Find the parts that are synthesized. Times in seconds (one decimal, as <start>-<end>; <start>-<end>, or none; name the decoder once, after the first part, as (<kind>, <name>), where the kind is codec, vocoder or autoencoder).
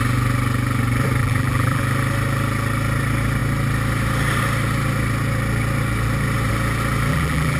1.2-1.8 (vocoder, BigVGAN v2); 7.1-7.6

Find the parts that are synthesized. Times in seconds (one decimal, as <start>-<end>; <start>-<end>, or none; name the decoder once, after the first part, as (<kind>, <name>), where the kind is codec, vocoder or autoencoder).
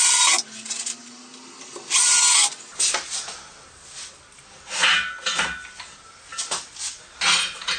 none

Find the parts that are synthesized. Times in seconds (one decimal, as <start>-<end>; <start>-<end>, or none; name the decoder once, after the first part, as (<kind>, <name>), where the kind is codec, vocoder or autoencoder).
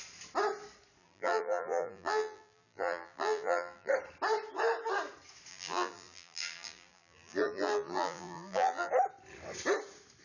1.0-3.9 (vocoder, BigVGAN v2); 5.5-8.9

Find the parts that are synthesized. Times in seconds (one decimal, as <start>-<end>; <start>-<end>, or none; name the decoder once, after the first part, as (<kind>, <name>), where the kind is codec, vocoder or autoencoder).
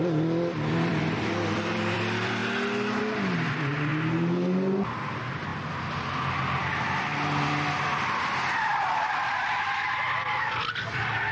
0.0-2.4 (vocoder, BigVGAN v2); 3.0-3.9; 5.1-5.5; 6.8-8.7; 9.3-11.3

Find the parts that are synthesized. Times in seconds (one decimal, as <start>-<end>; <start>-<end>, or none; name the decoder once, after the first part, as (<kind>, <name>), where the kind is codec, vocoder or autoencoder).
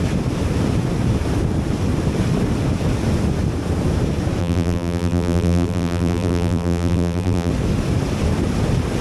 4.4-7.5 (vocoder, BigVGAN v2)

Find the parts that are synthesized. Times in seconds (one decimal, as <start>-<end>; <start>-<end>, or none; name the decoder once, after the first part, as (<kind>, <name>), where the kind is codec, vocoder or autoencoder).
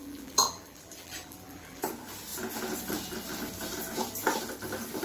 0.0-1.8 (vocoder, BigVGAN v2)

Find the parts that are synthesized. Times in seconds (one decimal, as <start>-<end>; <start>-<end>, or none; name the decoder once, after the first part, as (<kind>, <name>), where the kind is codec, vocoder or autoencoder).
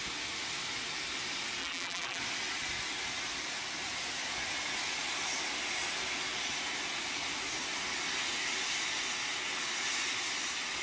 1.6-2.2 (vocoder, BigVGAN v2)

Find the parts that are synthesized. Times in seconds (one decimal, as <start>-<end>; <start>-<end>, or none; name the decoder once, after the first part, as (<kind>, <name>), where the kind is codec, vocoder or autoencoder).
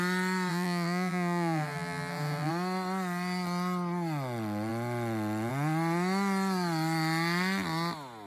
0.5-2.5 (vocoder, BigVGAN v2)